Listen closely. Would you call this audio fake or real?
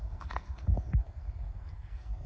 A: fake